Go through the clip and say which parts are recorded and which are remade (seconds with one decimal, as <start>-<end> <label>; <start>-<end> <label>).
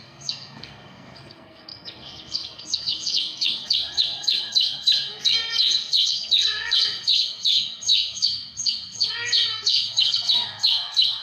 0.0-11.2 remade